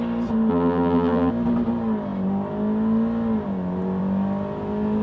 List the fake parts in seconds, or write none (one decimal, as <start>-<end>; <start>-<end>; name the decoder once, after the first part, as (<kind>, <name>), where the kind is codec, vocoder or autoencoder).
0.5-1.3 (vocoder, BigVGAN v2)